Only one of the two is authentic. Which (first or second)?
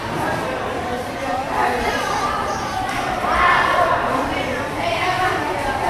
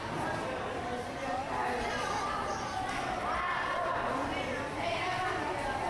second